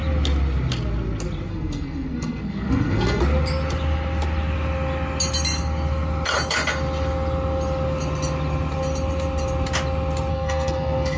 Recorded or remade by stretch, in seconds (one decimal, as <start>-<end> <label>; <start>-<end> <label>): 0.0-1.5 recorded; 1.5-3.2 remade; 3.2-10.3 recorded; 10.3-11.2 remade